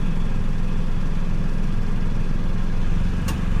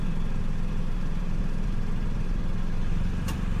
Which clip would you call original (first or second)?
first